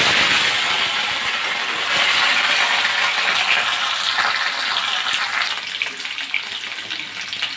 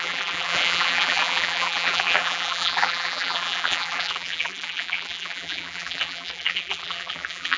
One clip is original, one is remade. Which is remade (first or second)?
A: second